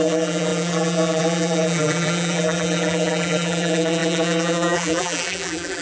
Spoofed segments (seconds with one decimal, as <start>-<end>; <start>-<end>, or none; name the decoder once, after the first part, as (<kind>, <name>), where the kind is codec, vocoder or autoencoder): 0.0-5.8 (vocoder, BigVGAN v2)